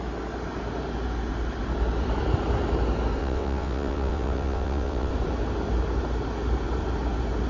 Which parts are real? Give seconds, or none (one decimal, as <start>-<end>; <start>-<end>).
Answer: 0.0-3.2; 5.1-7.5